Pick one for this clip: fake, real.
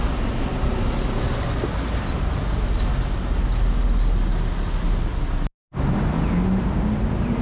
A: real